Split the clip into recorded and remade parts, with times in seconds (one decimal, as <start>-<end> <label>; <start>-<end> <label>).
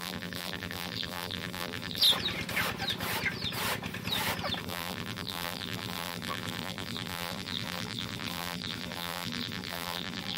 0.0-2.0 remade; 2.0-4.6 recorded; 4.6-10.4 remade